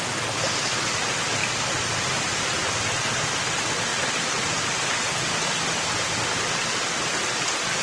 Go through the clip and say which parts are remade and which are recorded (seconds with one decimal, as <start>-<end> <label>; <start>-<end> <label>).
0.0-7.8 recorded